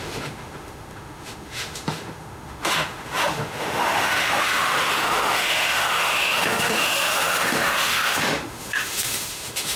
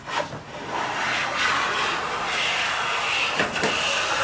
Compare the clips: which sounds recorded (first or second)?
second